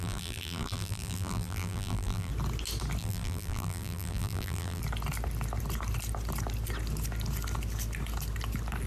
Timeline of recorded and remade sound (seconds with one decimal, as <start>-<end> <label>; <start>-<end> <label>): 0.0-2.3 remade; 2.3-3.0 recorded; 3.0-4.8 remade; 4.8-8.9 recorded